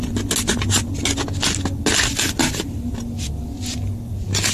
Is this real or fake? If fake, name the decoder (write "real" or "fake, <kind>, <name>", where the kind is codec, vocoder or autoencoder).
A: real